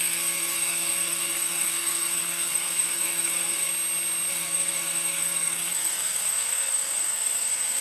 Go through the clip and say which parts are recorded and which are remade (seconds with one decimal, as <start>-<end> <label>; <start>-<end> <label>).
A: 0.0-3.7 remade; 3.7-4.3 recorded; 4.3-7.8 remade